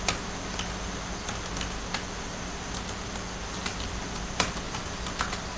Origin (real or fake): real